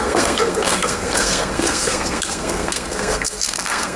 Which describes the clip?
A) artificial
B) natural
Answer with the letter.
A